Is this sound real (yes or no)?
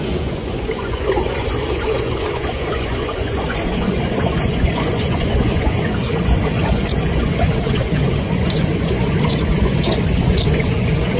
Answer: no